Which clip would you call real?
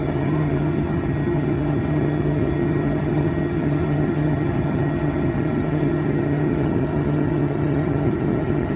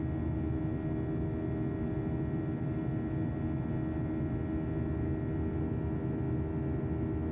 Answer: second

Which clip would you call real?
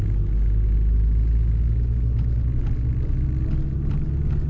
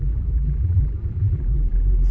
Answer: first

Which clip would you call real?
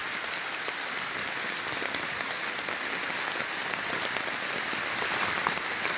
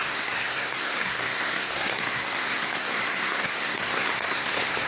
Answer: first